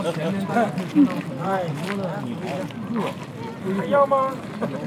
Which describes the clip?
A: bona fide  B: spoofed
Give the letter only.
A